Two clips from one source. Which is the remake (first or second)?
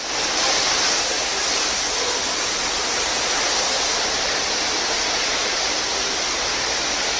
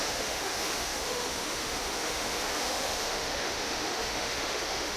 second